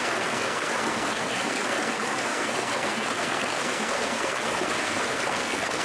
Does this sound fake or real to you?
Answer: fake